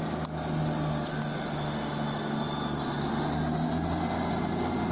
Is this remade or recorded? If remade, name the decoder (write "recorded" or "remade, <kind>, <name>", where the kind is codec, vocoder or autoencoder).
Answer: recorded